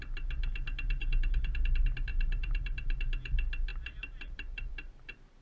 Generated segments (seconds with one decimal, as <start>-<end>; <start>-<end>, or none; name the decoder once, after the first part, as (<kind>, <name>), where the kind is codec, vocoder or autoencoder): 2.1-3.0 (vocoder, BigVGAN v2); 3.7-4.7